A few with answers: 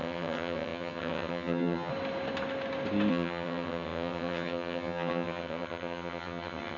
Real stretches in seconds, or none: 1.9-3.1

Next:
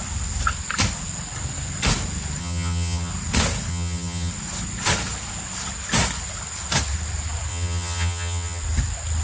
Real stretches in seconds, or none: 0.0-2.4; 3.1-3.7; 4.3-7.5; 8.6-9.2

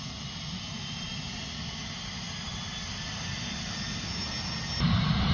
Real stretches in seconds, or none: 0.0-5.3